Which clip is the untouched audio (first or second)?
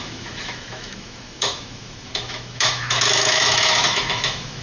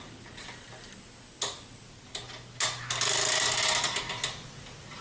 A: second